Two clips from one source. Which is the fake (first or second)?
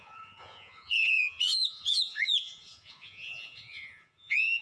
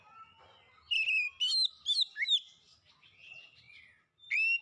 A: first